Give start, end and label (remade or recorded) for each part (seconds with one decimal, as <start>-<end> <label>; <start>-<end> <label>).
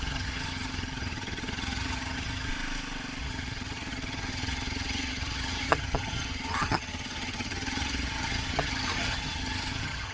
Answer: 0.0-2.5 remade; 2.5-3.2 recorded; 3.2-10.1 remade